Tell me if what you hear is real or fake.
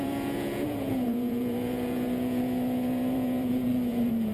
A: fake